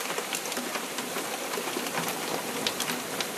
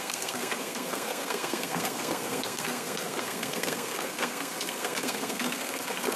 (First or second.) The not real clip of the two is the second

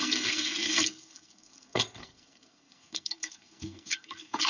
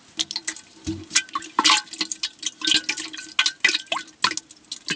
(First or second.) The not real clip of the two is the first